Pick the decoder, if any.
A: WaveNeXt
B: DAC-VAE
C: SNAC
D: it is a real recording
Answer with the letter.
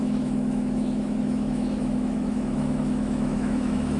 B